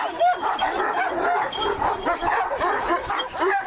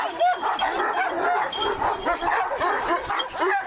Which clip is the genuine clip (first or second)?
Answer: second